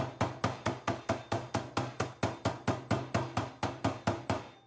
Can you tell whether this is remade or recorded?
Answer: recorded